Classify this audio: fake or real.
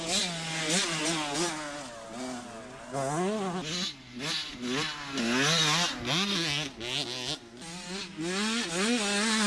real